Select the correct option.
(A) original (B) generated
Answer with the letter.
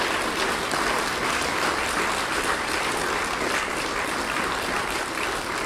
A